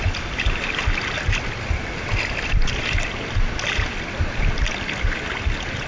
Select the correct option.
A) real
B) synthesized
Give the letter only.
A